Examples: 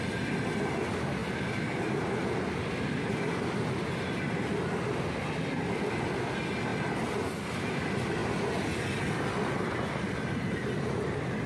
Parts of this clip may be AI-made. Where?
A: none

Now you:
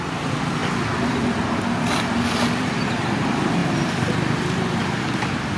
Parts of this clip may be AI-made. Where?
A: none

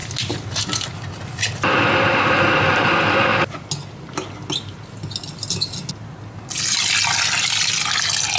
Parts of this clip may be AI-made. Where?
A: none

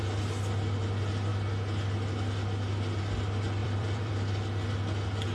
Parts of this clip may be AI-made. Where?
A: 3.6-4.1 (vocoder, BigVGAN v2)

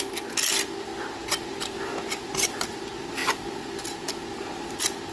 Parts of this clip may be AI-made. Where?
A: 2.1-2.8 (vocoder, BigVGAN v2)